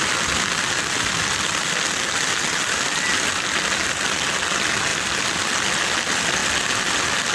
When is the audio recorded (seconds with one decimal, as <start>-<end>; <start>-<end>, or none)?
0.0-7.3